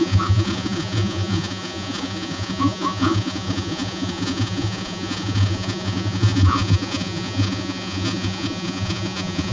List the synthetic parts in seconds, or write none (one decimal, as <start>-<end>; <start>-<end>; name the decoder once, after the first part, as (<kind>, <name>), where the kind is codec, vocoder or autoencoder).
0.0-9.5 (vocoder, Vocos)